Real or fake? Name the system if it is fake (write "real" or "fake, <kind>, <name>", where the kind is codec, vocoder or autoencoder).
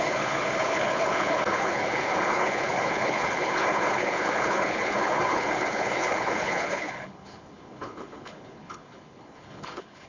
fake, codec, HILCodec